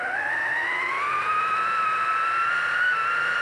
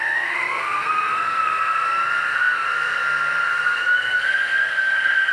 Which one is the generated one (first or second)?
second